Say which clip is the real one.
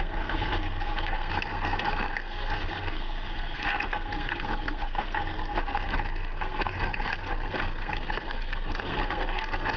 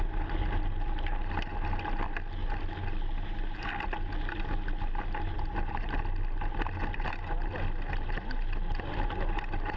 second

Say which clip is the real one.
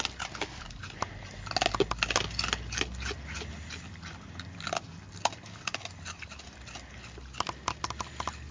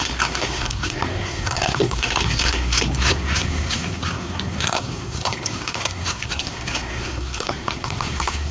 first